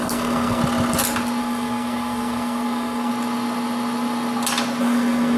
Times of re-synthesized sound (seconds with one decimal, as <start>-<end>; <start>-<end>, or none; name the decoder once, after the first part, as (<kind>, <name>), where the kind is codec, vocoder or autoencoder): 0.0-0.6 (codec, SNAC); 1.4-3.1; 4.8-5.4